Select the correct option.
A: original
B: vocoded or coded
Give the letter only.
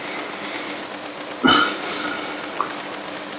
A